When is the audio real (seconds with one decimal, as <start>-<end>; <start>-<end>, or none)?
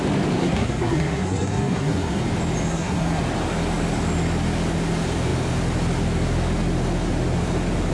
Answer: 0.0-0.4; 2.2-2.7; 3.2-7.9